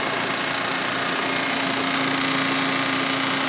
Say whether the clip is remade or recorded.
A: recorded